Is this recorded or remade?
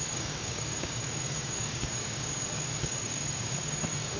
remade